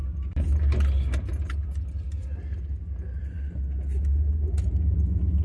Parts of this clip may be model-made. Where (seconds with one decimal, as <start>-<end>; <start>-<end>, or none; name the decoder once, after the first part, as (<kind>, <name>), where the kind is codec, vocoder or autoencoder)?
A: none